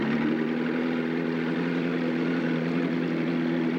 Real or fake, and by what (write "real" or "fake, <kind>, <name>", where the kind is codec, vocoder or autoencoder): real